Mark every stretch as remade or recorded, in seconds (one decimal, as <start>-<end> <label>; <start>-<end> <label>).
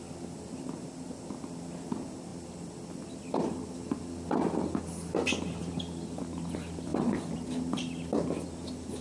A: 0.0-9.0 recorded